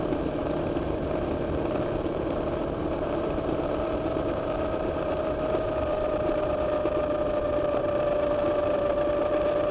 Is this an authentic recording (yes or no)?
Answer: no